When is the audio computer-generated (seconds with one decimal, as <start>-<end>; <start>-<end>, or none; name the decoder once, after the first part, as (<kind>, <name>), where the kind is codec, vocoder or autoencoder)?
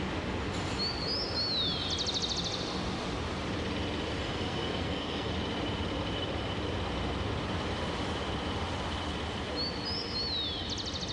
4.2-5.3 (codec, SNAC)